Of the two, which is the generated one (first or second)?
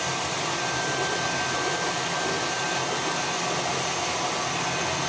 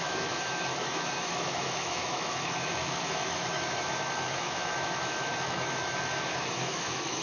second